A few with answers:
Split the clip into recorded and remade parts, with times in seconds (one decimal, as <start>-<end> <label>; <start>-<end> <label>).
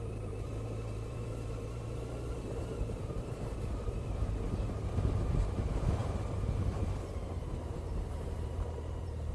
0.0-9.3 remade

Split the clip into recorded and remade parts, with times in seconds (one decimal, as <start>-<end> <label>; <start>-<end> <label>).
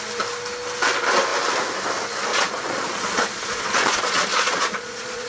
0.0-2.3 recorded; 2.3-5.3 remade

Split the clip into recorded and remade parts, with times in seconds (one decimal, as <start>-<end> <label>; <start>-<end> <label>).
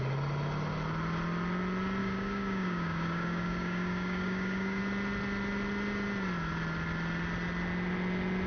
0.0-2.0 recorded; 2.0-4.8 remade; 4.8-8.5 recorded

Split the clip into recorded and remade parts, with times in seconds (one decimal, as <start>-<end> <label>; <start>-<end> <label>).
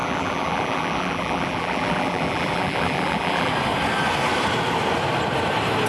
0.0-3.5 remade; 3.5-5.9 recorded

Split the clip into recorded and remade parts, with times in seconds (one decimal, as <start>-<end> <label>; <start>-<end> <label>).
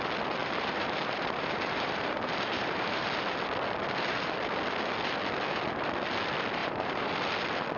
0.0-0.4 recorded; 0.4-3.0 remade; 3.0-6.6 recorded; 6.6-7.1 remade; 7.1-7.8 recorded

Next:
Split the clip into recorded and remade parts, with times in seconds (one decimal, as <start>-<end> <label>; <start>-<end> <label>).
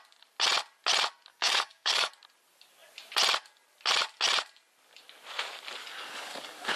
0.0-1.3 recorded; 1.3-2.1 remade; 2.1-5.8 recorded; 5.8-6.8 remade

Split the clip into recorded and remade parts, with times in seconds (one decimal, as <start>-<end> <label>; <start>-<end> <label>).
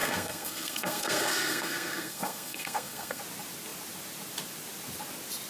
0.0-3.2 remade; 3.2-5.5 recorded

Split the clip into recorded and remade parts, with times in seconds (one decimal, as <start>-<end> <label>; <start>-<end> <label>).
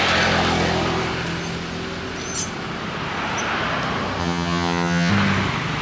0.0-4.2 recorded; 4.2-5.1 remade; 5.1-5.8 recorded